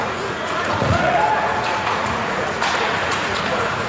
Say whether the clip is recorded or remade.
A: remade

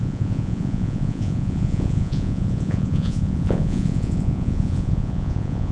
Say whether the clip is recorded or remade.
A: remade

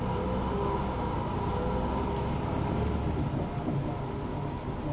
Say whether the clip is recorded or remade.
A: recorded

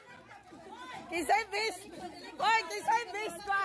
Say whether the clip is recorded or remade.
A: recorded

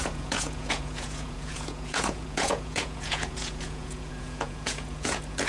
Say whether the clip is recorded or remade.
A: remade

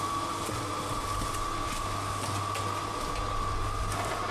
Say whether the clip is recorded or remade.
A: recorded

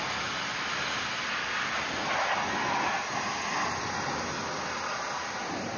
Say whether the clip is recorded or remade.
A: recorded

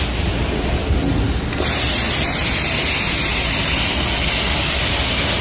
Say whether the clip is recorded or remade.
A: recorded